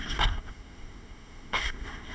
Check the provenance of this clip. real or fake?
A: fake